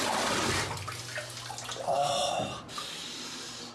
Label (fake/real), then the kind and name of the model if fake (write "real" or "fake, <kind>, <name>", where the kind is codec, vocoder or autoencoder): real